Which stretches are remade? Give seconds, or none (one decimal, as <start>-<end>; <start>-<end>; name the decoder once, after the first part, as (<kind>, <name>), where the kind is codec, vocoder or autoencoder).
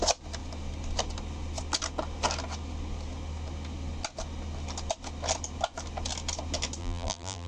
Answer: 6.8-7.5 (vocoder, BigVGAN v2)